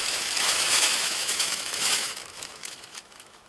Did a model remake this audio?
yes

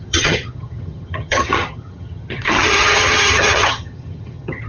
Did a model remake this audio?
yes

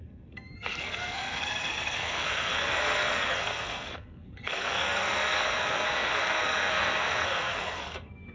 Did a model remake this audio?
yes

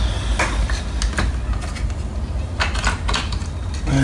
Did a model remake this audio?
no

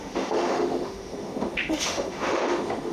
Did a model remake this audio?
yes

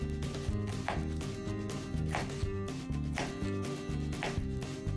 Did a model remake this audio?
no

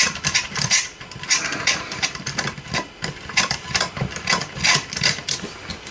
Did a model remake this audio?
yes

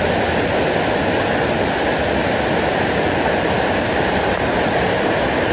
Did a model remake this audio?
no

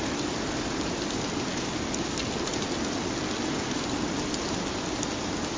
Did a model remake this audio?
no